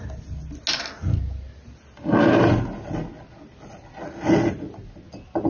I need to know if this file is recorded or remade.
recorded